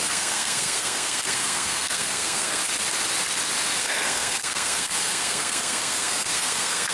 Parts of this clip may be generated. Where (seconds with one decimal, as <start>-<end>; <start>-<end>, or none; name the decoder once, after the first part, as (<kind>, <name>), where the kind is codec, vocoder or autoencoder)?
0.0-2.6 (codec, SNAC); 3.8-6.9

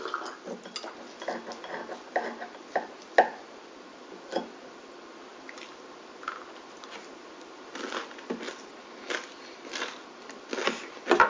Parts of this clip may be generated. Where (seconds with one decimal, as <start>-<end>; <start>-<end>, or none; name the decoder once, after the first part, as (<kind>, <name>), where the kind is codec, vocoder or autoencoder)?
none

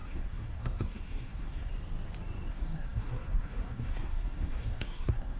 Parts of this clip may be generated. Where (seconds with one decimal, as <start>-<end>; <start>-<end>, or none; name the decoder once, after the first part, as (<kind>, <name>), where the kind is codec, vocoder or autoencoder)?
0.0-1.7 (codec, SNAC); 2.5-5.4

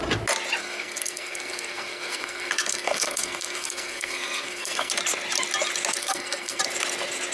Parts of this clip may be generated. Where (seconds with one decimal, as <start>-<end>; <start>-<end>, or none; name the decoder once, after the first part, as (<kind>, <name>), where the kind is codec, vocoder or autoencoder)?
0.6-4.9 (codec, SNAC); 6.0-6.6

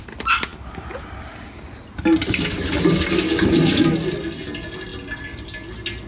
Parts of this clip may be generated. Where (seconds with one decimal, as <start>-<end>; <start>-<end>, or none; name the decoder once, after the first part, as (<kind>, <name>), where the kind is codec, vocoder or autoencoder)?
none

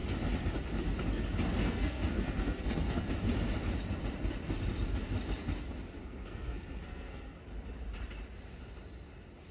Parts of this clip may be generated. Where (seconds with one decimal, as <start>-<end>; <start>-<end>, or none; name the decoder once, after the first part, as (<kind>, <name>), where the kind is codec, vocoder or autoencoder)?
1.6-3.1 (codec, SNAC); 6.0-7.4